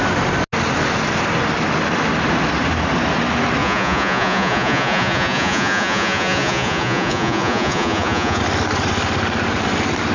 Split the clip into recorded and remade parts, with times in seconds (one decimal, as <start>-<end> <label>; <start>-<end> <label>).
0.0-3.6 recorded; 3.6-8.4 remade; 8.4-10.1 recorded